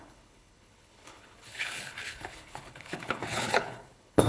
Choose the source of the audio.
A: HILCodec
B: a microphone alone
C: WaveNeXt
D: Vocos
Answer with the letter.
A